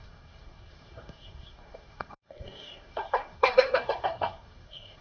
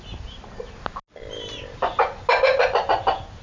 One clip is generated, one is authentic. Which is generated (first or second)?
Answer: first